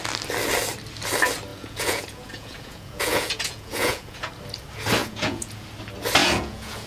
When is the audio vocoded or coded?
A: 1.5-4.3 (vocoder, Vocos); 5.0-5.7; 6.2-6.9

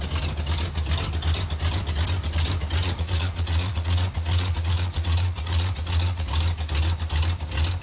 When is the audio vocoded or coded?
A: 2.8-6.3 (vocoder, Vocos)

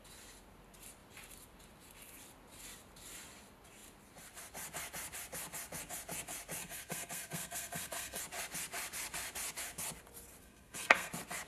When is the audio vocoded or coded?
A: 6.6-8.2 (codec, SNAC); 10.4-11.1

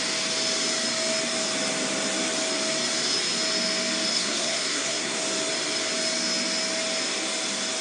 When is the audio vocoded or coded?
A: 4.1-5.2 (codec, SNAC)